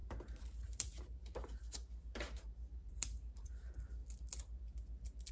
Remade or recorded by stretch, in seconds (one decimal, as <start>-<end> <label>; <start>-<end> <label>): 0.0-4.0 remade; 4.0-5.3 recorded